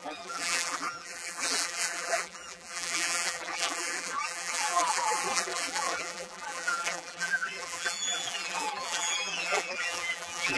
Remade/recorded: remade